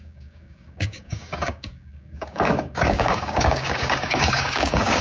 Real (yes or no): no